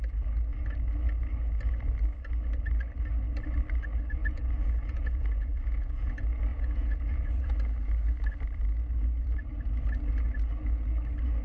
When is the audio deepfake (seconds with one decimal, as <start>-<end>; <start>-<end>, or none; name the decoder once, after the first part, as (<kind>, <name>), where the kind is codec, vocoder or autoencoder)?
4.2-6.1 (vocoder, Vocos); 6.5-7.5